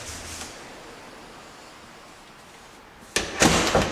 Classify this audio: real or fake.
real